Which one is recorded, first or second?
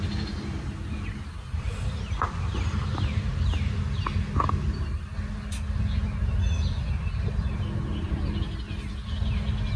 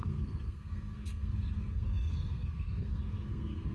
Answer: first